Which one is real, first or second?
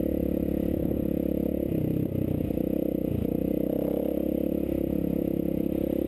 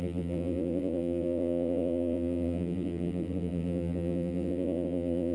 first